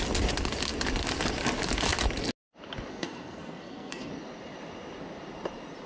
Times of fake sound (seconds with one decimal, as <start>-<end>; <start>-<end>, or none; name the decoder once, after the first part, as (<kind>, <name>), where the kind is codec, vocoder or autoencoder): 2.9-4.1 (codec, SNAC)